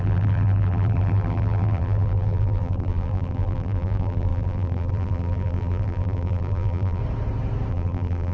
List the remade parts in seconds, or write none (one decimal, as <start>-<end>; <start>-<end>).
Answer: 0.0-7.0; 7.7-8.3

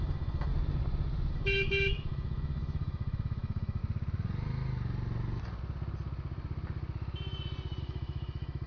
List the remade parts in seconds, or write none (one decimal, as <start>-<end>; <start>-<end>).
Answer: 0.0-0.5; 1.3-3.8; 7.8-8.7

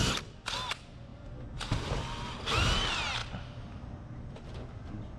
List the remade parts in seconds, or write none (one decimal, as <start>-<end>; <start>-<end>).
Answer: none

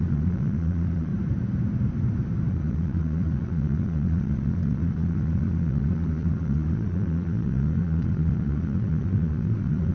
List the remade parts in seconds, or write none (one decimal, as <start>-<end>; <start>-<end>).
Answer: 0.0-1.1; 2.5-9.9

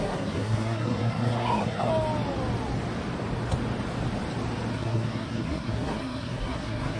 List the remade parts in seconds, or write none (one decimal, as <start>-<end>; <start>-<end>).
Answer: 0.0-1.9; 4.7-7.0

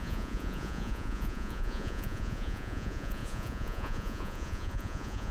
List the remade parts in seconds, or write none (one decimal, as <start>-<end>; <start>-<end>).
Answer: 0.0-5.3